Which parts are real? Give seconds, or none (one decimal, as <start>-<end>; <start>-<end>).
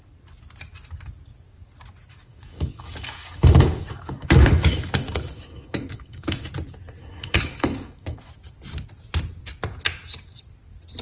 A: 0.0-2.2; 6.5-7.0; 8.3-11.0